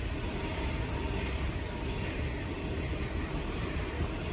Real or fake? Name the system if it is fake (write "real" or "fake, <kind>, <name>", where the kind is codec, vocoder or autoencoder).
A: real